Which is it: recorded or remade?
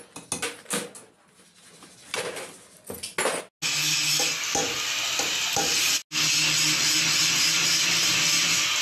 recorded